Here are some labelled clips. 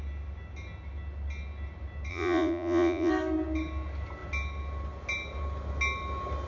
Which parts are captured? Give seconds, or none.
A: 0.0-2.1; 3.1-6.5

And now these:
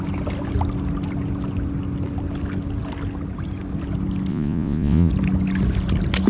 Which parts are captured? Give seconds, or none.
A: 0.0-4.3; 5.1-6.3

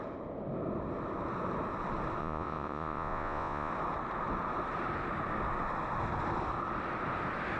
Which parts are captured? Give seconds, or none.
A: 0.0-2.2; 3.7-7.6